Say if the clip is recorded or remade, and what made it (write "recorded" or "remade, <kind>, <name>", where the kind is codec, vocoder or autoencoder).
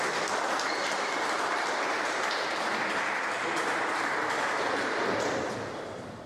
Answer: recorded